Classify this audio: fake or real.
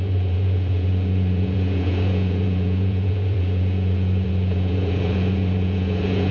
fake